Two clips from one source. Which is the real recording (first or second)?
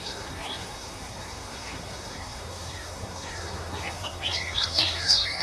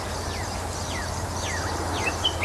second